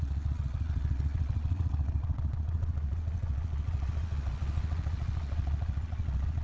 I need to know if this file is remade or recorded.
remade